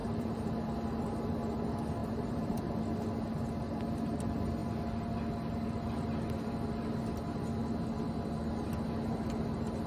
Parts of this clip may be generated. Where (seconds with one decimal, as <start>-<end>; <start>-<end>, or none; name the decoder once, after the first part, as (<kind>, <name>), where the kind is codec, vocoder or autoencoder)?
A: 0.0-0.5 (vocoder, BigVGAN v2); 2.0-2.6